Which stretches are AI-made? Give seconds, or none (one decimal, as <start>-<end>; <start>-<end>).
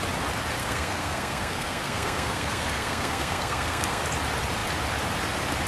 0.6-4.0